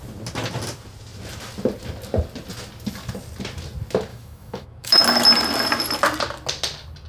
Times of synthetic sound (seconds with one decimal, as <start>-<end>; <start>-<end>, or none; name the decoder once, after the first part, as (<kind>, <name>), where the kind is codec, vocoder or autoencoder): 4.1-5.0 (autoencoder, DAC-VAE)